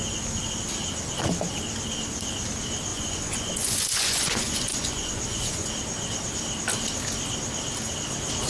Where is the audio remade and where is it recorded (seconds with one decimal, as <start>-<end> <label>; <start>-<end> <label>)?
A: 0.0-2.9 recorded; 2.9-5.7 remade; 5.7-8.5 recorded

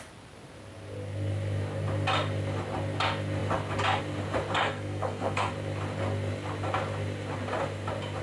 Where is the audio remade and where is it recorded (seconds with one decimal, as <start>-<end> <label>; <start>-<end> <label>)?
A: 0.0-4.6 recorded; 4.6-5.5 remade; 5.5-8.2 recorded

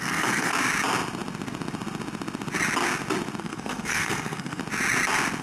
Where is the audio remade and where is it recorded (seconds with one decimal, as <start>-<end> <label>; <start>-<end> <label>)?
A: 0.0-0.5 remade; 0.5-3.4 recorded; 3.4-4.6 remade; 4.6-5.4 recorded